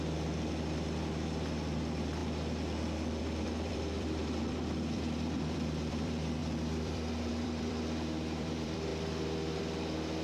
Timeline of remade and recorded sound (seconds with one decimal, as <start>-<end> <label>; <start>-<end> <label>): 0.0-2.2 remade; 2.2-3.2 recorded; 3.2-8.9 remade; 8.9-9.6 recorded; 9.6-10.2 remade